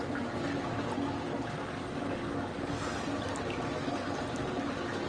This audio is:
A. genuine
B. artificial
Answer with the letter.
A